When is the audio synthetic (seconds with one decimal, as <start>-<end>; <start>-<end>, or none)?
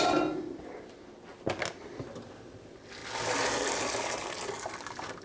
none